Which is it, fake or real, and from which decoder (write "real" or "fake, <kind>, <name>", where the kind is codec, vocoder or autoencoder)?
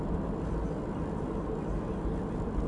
real